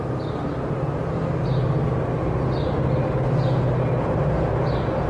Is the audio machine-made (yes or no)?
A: no